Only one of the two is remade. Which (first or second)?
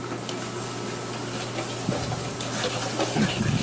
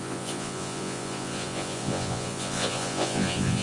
second